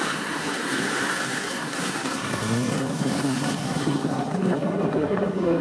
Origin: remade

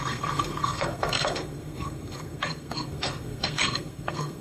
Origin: remade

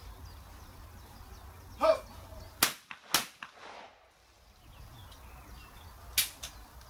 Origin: recorded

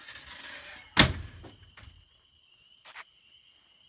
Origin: recorded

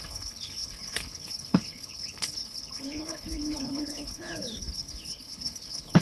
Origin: remade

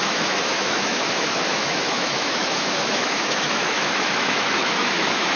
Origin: remade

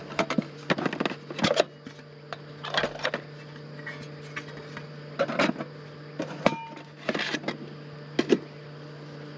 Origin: recorded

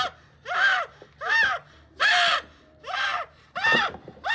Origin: recorded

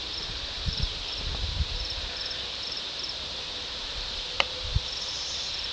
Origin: remade